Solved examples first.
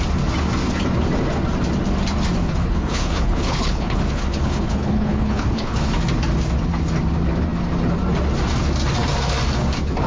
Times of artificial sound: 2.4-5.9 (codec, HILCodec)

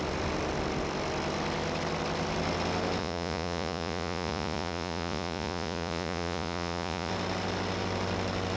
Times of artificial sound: 3.0-7.1 (vocoder, Vocos)

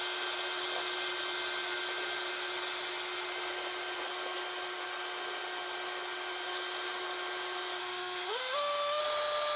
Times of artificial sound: 7.8-9.0 (autoencoder, DAC-VAE)

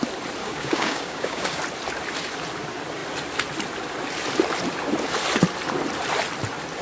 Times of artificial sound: 0.4-1.6 (codec, DAC)

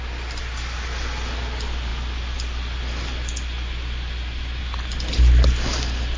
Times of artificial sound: none

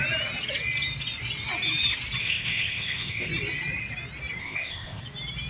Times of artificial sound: 2.2-3.3 (codec, ZipCodec); 4.4-5.0

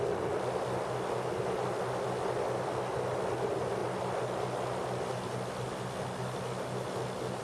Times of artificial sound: none